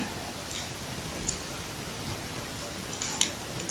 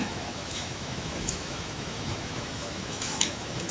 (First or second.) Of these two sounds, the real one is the first